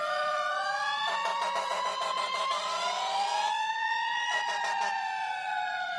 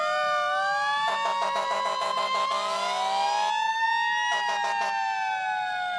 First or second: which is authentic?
second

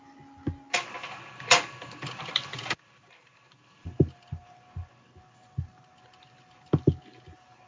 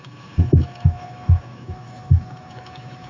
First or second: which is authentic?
first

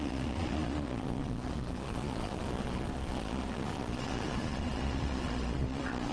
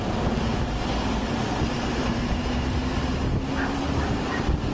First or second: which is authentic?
second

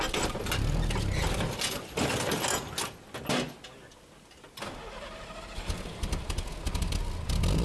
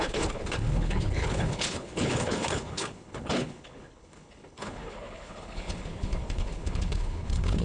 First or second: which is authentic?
first